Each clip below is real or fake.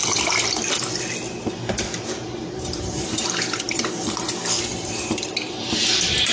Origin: real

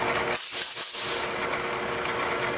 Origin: real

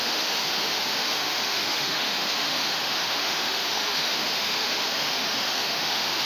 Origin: fake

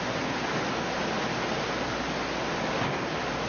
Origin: real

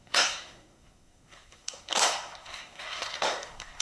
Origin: fake